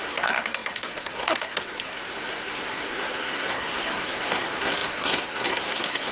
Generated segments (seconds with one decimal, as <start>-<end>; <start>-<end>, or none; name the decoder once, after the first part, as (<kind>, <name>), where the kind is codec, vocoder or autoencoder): 0.0-6.1 (codec, SNAC)